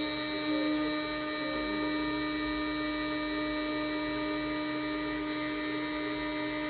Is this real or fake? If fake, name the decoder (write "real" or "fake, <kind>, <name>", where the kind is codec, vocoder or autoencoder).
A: real